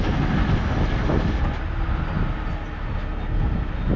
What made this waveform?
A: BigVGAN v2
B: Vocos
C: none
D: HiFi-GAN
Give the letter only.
C